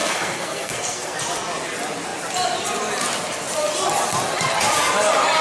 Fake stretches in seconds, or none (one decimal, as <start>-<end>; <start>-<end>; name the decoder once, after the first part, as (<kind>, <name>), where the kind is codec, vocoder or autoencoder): 0.0-1.2 (codec, SNAC)